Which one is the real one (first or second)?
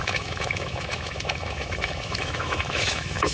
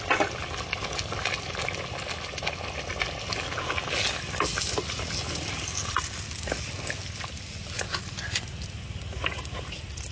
second